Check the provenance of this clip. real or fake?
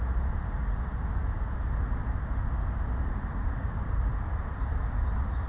real